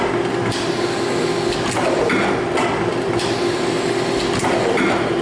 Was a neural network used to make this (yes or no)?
no